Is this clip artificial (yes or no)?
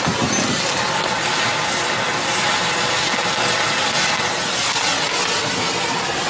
no